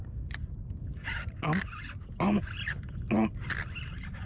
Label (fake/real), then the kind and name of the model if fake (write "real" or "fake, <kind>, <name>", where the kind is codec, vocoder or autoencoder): real